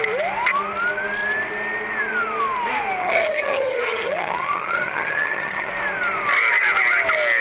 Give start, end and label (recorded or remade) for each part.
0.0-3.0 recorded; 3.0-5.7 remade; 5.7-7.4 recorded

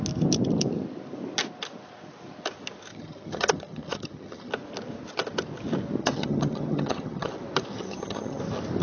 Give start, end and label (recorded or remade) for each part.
0.0-2.9 recorded; 2.9-4.5 remade; 4.5-6.0 recorded; 6.0-7.3 remade; 7.3-7.7 recorded; 7.7-8.4 remade; 8.4-8.8 recorded